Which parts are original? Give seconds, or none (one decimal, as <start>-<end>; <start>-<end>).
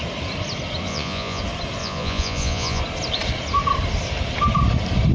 0.0-0.9; 1.4-1.8; 2.8-5.1